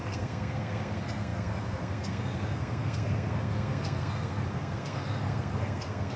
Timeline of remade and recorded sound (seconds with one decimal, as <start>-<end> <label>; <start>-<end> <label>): 0.0-6.2 remade